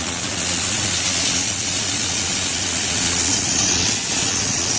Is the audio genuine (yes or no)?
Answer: no